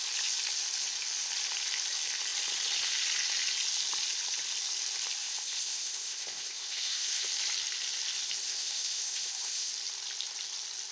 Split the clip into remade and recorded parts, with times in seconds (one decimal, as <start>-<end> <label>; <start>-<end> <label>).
0.0-5.2 recorded; 5.2-7.3 remade; 7.3-8.4 recorded; 8.4-9.7 remade; 9.7-10.9 recorded

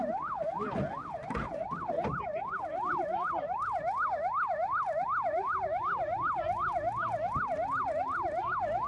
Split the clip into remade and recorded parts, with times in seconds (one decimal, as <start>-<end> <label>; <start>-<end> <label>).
0.0-8.9 recorded

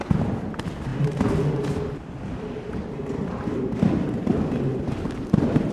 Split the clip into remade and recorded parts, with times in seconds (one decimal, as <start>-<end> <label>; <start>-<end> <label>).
0.0-0.9 remade; 0.9-2.2 recorded; 2.2-3.0 remade; 3.0-4.8 recorded; 4.8-5.7 remade

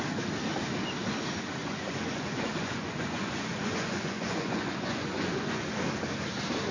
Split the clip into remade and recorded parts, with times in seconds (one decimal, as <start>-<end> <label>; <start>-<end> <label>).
0.0-1.6 recorded; 1.6-5.6 remade; 5.6-6.7 recorded

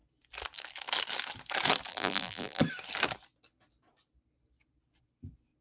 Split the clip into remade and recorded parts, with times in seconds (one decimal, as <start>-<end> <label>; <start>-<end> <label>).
0.0-1.9 recorded; 1.9-2.6 remade; 2.6-5.6 recorded

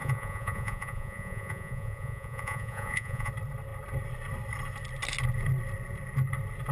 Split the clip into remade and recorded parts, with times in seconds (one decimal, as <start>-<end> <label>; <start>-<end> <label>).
0.0-3.3 remade; 3.3-6.7 recorded

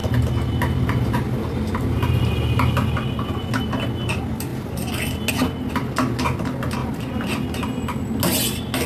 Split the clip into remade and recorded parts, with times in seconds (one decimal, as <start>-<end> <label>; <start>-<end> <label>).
0.0-6.8 recorded; 6.8-8.1 remade; 8.1-8.9 recorded